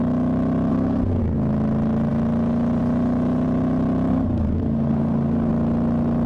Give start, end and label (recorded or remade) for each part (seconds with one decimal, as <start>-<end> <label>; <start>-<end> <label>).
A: 0.0-0.7 recorded; 0.7-1.2 remade; 1.2-4.1 recorded; 4.1-5.5 remade; 5.5-6.3 recorded